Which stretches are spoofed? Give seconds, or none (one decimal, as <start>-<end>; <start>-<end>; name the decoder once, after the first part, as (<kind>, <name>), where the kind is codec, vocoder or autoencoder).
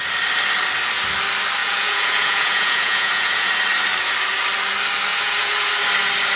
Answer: 1.6-3.5 (vocoder, Vocos); 5.1-5.7